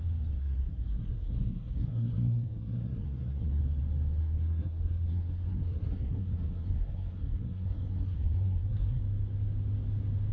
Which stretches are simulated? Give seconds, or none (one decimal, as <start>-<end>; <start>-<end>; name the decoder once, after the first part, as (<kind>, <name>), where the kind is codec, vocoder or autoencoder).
0.4-3.6 (codec, SNAC); 4.2-9.0